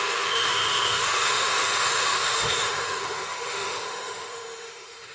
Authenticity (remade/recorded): remade